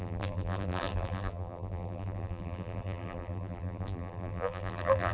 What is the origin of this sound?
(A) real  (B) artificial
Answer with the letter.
B